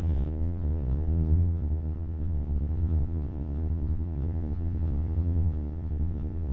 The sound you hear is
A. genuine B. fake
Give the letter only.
B